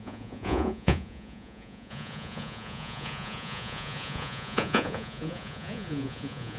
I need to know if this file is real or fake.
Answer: fake